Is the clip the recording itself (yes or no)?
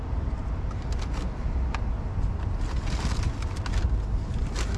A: yes